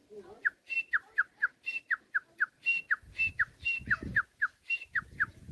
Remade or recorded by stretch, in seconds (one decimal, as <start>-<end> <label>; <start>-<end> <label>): 0.0-5.5 recorded